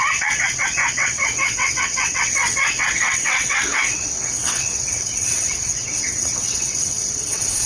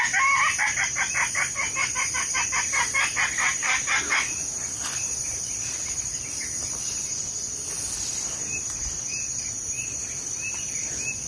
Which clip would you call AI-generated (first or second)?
first